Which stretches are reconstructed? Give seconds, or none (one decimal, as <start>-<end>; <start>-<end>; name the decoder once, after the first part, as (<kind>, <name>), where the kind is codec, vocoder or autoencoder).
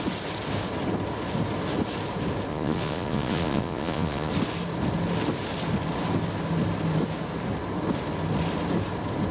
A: 2.5-4.3 (vocoder, Vocos)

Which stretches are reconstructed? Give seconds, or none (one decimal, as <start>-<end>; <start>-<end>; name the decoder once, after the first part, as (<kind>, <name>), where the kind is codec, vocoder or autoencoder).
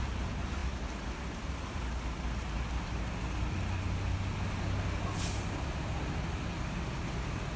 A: none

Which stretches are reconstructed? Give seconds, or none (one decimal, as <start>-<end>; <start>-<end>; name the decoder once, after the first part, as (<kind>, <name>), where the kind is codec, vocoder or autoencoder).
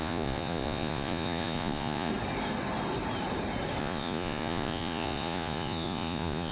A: 0.0-2.1 (vocoder, Vocos); 3.8-6.5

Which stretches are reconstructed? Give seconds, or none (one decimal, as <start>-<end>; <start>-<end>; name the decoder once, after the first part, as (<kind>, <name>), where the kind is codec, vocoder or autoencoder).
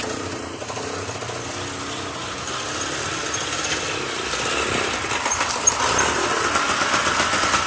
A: none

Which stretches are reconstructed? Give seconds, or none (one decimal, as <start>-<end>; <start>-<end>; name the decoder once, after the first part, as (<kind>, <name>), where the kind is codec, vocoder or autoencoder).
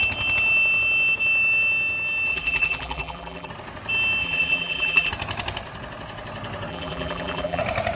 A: 2.3-3.5 (vocoder, BigVGAN v2); 4.2-5.1; 6.7-7.6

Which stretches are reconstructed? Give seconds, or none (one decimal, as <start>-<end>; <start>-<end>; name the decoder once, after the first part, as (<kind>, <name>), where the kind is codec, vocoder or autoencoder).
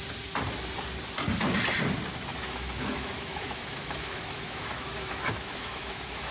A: 2.3-6.3 (autoencoder, DAC-VAE)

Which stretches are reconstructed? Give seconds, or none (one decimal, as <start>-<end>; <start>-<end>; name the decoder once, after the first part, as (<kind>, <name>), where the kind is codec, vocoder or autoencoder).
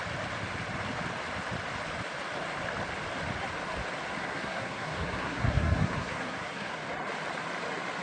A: 4.2-6.8 (codec, SNAC)